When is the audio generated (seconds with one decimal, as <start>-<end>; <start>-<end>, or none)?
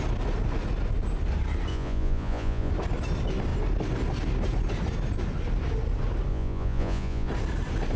1.7-2.7; 6.3-7.3